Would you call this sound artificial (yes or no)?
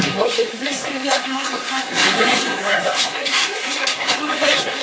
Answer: yes